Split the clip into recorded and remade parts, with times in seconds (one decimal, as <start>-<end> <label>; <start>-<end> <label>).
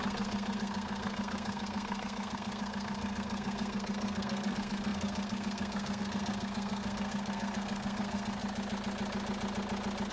0.0-8.4 remade; 8.4-10.1 recorded